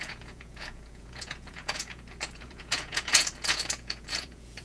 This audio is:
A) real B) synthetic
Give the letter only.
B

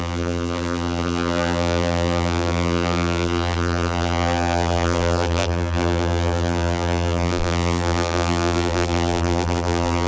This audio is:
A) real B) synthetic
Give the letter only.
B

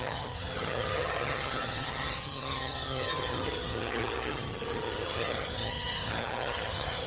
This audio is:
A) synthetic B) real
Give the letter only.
A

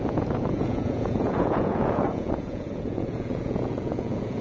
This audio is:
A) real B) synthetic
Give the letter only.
B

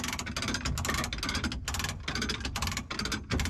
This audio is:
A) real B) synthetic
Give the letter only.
A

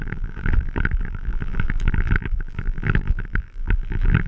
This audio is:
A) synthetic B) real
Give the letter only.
A